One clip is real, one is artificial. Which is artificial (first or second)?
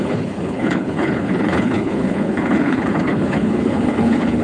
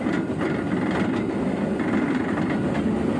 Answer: first